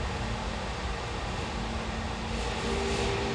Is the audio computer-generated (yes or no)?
no